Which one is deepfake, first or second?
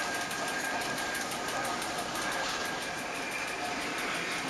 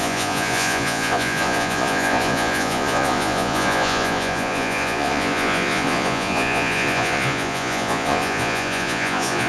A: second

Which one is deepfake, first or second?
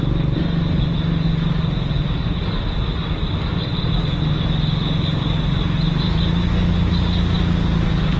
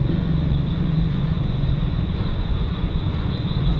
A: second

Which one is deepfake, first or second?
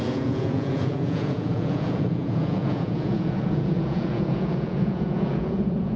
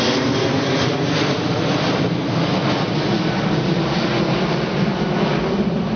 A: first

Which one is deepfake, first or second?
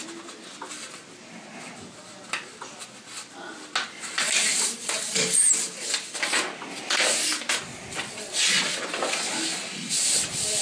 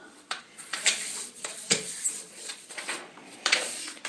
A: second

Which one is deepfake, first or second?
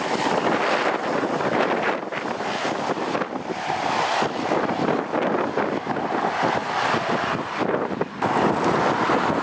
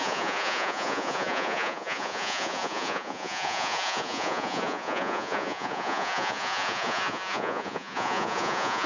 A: second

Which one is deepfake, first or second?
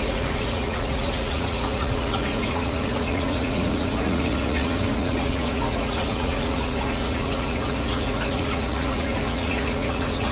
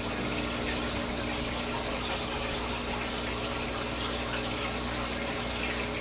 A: first